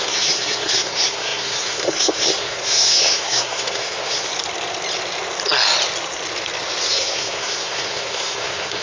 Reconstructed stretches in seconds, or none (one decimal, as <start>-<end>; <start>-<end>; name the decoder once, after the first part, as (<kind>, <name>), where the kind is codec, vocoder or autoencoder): 0.0-4.3 (codec, SNAC); 6.9-8.8